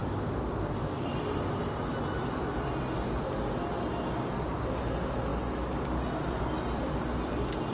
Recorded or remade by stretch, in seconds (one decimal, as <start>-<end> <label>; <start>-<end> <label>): 0.0-7.7 recorded